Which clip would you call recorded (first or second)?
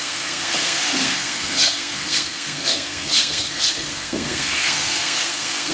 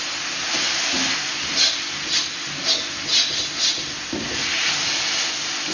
second